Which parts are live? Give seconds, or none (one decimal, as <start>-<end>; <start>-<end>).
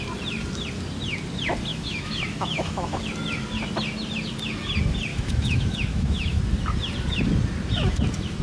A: 0.0-1.7; 3.0-5.1; 6.4-8.4